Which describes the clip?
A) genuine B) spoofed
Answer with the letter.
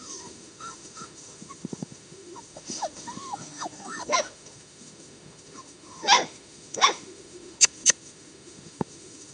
B